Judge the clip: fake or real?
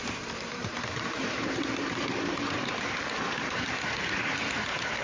fake